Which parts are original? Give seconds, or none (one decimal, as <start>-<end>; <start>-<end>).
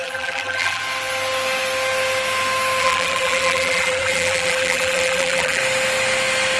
0.8-2.8; 5.6-6.6